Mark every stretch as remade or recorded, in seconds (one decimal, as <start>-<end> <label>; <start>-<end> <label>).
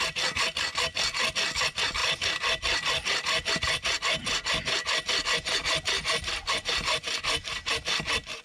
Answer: 0.0-8.4 recorded